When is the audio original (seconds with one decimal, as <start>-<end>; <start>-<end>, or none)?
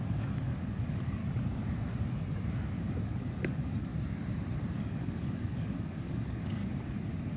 1.2-2.8; 3.9-4.6; 6.6-7.4